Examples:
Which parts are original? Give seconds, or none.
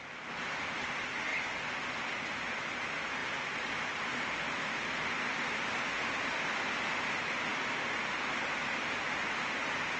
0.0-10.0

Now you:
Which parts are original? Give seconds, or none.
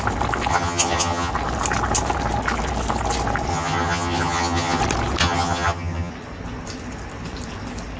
0.0-0.5; 1.3-3.5; 4.8-5.2; 6.1-8.0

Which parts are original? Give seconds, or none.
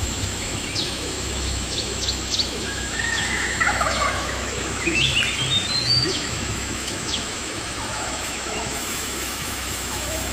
5.1-5.8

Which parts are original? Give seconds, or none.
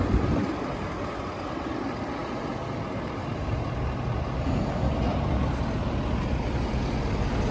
0.0-7.5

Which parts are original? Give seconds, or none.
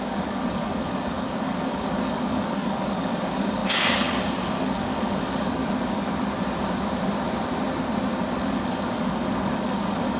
5.6-8.4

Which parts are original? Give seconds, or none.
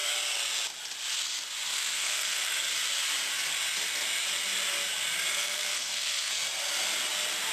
0.0-1.7; 2.5-5.3; 6.3-7.5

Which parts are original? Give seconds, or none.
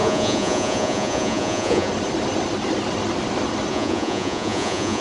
1.9-3.7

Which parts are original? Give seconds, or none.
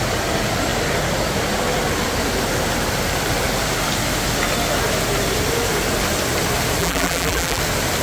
0.0-6.8; 7.6-8.0